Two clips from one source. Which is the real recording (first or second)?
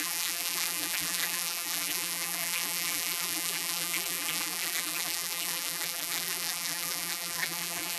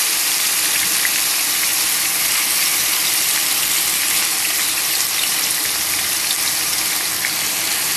second